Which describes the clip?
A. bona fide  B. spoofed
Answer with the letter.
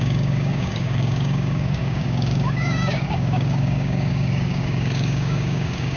B